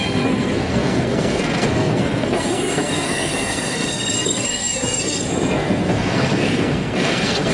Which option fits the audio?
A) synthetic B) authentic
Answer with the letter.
A